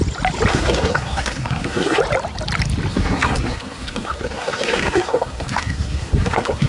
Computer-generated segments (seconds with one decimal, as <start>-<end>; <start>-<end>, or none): 0.5-2.0; 2.9-6.7

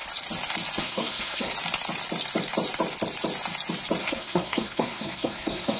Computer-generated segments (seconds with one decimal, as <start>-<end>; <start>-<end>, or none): 0.8-1.5; 4.0-5.8

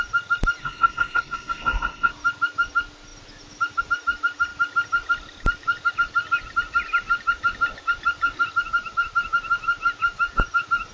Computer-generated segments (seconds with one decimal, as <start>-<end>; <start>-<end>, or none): 0.6-2.1

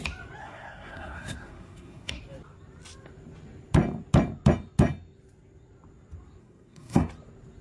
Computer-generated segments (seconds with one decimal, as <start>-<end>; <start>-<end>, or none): 0.4-2.2; 6.4-7.0

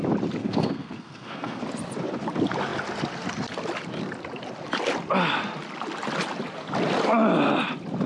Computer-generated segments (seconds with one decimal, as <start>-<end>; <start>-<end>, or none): 0.4-1.6

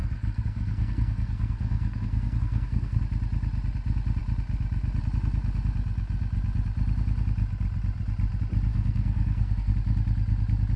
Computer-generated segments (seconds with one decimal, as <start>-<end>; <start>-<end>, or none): 0.0-3.0; 8.7-9.7

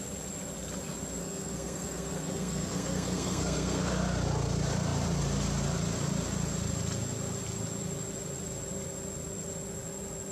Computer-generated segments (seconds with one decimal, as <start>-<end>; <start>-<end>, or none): 1.2-3.9